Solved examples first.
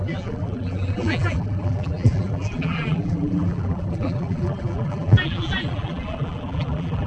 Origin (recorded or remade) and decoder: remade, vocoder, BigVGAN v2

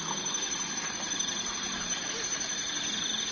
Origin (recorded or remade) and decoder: recorded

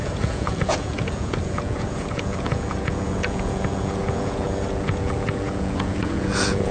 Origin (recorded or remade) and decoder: remade, vocoder, Vocos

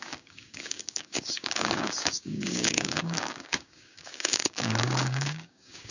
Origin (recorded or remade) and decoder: remade, codec, DAC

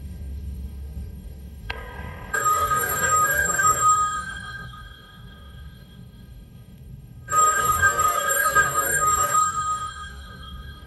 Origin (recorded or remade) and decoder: remade, codec, DAC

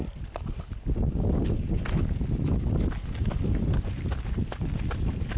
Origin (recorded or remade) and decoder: recorded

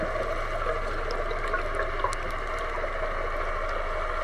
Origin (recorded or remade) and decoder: recorded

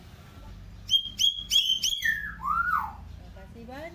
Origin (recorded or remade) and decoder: recorded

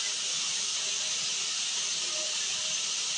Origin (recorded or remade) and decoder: recorded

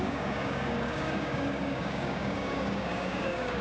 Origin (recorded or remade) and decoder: remade, codec, DAC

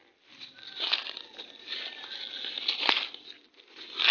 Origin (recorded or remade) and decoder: recorded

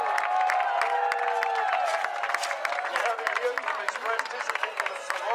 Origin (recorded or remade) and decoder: recorded